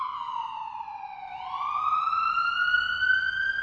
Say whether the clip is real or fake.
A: real